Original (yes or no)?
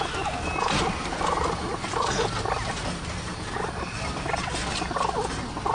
yes